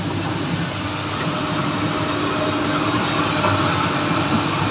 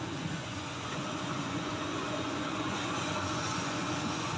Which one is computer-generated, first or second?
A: second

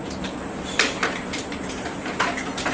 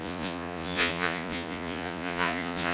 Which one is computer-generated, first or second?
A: second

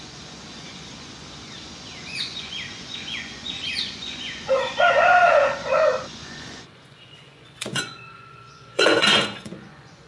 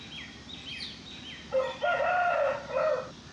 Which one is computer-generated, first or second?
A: first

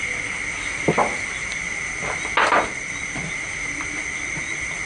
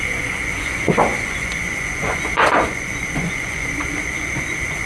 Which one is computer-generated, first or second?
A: second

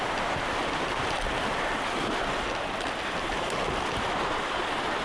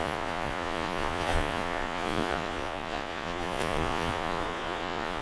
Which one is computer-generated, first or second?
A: second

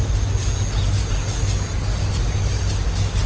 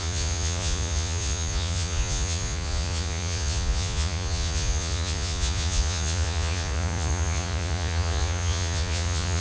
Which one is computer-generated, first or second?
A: second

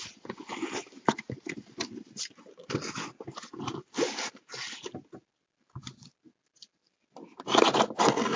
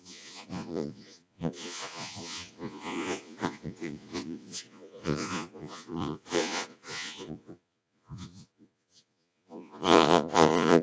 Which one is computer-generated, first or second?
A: second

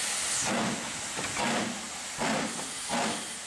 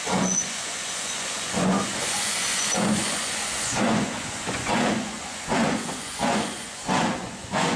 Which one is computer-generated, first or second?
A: second